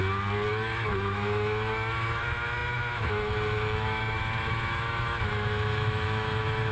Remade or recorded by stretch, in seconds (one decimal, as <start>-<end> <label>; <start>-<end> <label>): 0.0-0.5 recorded; 0.5-6.7 remade